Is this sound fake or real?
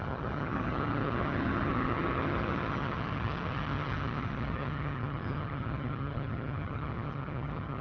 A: fake